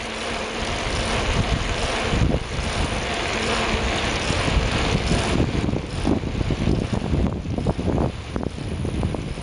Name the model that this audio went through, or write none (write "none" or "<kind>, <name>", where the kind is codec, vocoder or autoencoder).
none